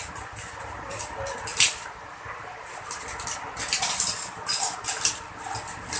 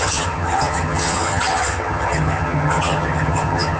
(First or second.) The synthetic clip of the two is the second